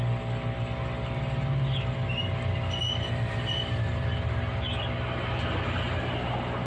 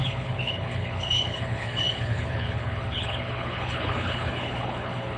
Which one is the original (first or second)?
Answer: first